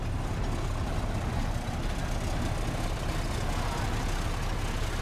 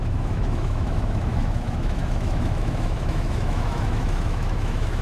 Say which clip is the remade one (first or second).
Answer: second